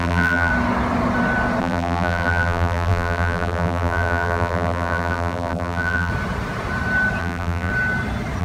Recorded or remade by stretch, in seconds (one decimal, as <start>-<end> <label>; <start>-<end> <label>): 0.0-0.5 remade; 0.5-1.6 recorded; 1.6-6.1 remade; 6.1-7.2 recorded; 7.2-7.7 remade; 7.7-8.4 recorded